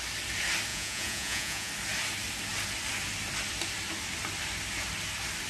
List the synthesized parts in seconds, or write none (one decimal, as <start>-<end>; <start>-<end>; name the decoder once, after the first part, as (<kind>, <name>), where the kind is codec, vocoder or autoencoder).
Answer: 0.7-1.7 (vocoder, Vocos)